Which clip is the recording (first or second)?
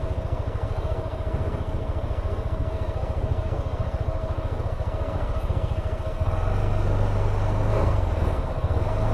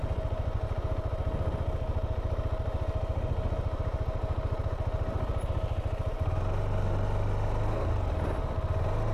second